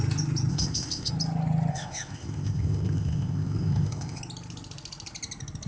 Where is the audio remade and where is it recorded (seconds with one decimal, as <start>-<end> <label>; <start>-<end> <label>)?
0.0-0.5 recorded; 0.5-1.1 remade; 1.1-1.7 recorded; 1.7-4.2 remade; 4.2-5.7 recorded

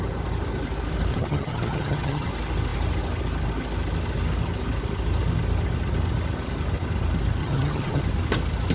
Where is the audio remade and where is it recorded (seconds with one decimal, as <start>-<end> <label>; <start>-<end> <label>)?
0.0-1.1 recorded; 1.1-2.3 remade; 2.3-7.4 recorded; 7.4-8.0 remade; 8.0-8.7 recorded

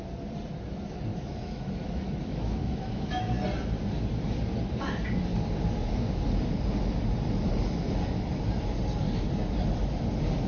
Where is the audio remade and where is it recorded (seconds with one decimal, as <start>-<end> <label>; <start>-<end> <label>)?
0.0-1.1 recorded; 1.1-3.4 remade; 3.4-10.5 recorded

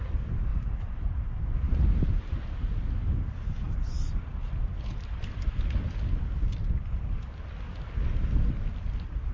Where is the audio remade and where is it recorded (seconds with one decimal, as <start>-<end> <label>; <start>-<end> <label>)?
0.0-0.5 recorded; 0.5-2.5 remade; 2.5-9.3 recorded

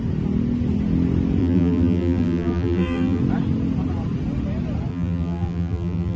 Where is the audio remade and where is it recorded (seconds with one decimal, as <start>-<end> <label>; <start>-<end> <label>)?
0.0-1.4 recorded; 1.4-3.2 remade; 3.2-4.9 recorded; 4.9-6.2 remade